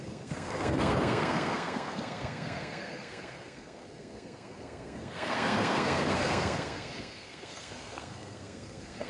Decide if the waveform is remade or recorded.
remade